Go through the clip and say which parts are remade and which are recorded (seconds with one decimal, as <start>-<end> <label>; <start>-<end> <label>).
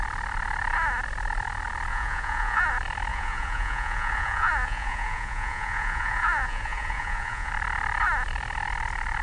0.0-1.9 recorded; 1.9-2.7 remade; 2.7-3.1 recorded; 3.1-7.5 remade; 7.5-9.2 recorded